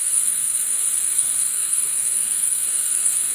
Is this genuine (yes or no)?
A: no